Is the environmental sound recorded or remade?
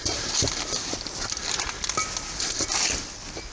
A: recorded